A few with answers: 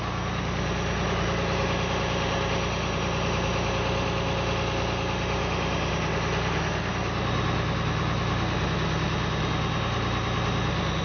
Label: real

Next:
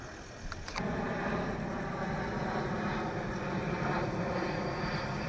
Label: real